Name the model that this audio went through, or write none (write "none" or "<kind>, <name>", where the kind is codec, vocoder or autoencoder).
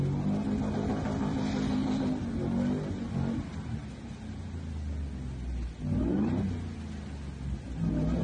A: none